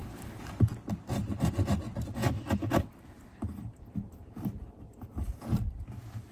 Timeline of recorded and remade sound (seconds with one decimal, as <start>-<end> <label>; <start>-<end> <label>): 0.0-0.6 remade; 0.6-6.3 recorded

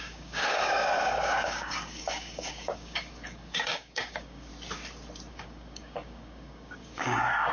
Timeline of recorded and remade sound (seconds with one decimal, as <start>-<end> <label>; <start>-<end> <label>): 0.0-4.5 remade; 4.5-5.3 recorded; 5.3-7.5 remade

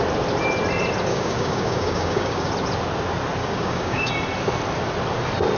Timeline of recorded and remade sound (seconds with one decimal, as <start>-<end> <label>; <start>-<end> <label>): 0.0-1.1 recorded; 1.1-2.5 remade; 2.5-3.4 recorded; 3.4-4.1 remade; 4.1-5.6 recorded

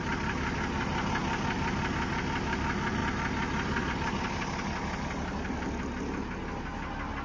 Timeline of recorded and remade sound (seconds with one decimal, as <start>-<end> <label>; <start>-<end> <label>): 0.0-7.2 recorded

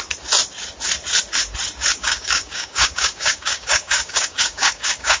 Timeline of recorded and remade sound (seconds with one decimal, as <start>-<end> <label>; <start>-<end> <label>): 0.0-1.9 recorded; 1.9-5.2 remade